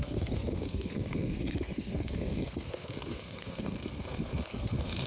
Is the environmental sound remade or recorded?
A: remade